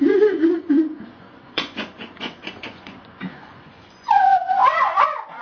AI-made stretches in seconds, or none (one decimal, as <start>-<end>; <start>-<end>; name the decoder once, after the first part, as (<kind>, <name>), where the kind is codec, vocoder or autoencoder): 0.0-5.4 (vocoder, Vocos)